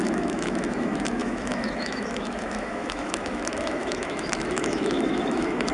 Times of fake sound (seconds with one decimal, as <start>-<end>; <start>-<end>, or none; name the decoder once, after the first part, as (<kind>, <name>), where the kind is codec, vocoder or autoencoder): 0.0-5.7 (autoencoder, DAC-VAE)